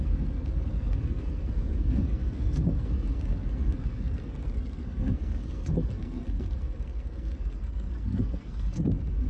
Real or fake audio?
fake